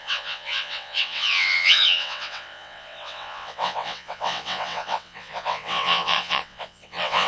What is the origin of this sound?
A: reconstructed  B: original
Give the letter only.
A